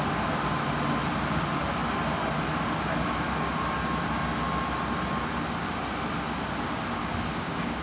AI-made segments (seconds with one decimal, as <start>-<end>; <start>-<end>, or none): 7.0-7.8